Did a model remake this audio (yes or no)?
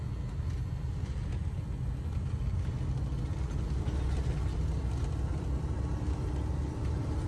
no